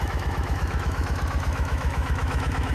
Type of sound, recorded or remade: remade